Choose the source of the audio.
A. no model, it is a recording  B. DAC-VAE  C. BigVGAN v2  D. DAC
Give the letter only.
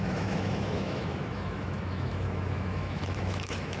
B